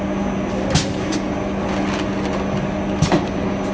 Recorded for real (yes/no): yes